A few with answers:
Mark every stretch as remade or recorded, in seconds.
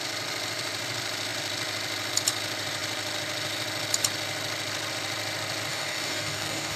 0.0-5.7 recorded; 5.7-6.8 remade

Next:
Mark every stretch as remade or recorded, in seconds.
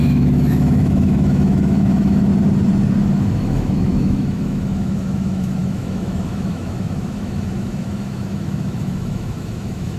0.0-2.3 remade; 2.3-3.0 recorded; 3.0-10.0 remade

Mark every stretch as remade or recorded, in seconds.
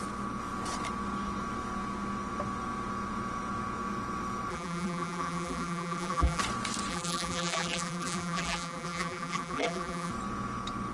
0.0-4.5 recorded; 4.5-6.4 remade; 6.4-6.9 recorded; 6.9-10.1 remade; 10.1-10.9 recorded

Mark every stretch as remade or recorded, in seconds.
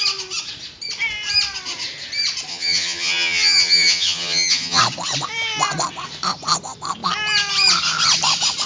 0.0-2.5 recorded; 2.5-4.8 remade; 4.8-8.7 recorded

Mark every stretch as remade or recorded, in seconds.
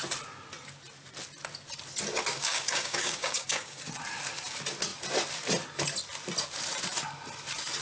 0.0-2.3 recorded; 2.3-3.9 remade; 3.9-7.8 recorded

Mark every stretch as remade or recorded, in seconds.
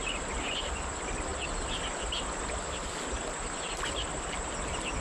0.0-5.0 recorded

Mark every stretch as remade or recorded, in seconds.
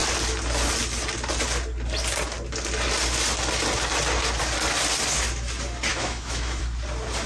0.0-5.9 recorded; 5.9-6.6 remade; 6.6-7.3 recorded